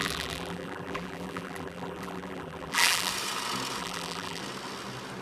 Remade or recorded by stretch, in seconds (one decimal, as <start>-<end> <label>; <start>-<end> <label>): 0.0-3.1 remade; 3.1-3.8 recorded; 3.8-4.4 remade; 4.4-5.2 recorded